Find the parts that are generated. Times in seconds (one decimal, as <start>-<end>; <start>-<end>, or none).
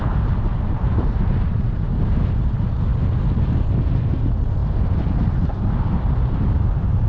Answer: 1.5-2.2; 4.6-5.7